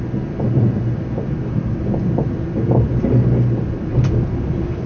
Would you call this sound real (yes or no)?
yes